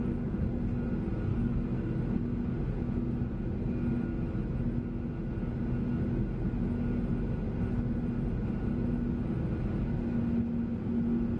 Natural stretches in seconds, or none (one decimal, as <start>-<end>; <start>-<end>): 0.0-1.3; 1.9-11.4